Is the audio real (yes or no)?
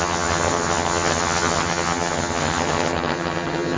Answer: no